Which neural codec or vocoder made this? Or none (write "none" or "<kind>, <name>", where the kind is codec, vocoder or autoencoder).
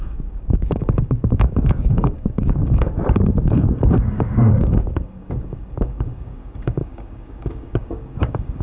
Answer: codec, DAC